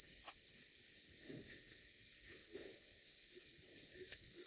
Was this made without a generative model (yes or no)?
no